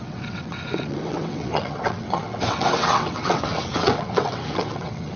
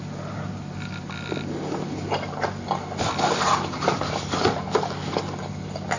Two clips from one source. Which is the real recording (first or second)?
second